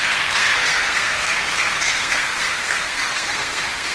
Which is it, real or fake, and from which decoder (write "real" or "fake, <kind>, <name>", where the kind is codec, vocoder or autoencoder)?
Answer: fake, codec, SNAC